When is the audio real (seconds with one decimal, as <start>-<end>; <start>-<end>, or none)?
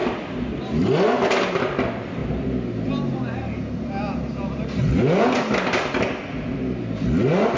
0.0-7.6